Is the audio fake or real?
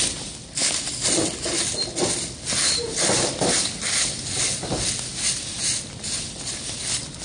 real